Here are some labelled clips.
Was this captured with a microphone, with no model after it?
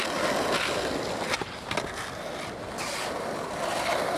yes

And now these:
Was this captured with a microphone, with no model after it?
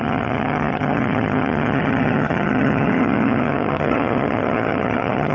no